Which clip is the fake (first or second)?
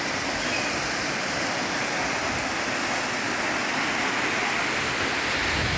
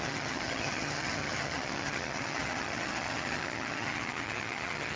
second